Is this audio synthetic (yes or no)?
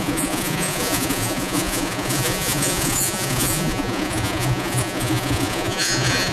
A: yes